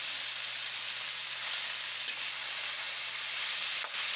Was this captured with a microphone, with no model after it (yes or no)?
yes